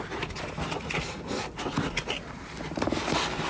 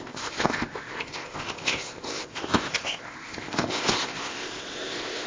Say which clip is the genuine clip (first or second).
first